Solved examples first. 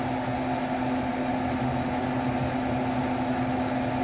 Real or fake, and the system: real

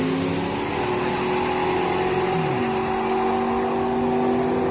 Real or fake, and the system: real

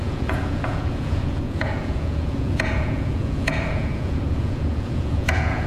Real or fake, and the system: fake, vocoder, Vocos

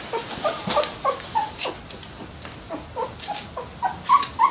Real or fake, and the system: real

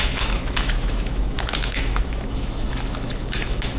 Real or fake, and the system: fake, autoencoder, DAC-VAE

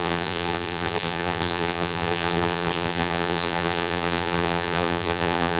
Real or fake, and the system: fake, vocoder, BigVGAN v2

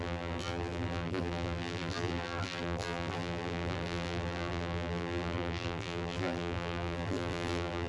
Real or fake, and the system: fake, vocoder, BigVGAN v2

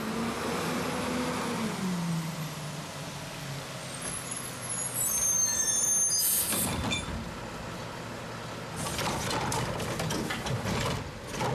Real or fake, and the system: real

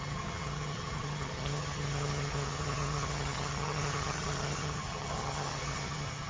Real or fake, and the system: fake, vocoder, HiFi-GAN